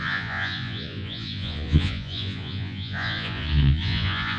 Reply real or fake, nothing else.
fake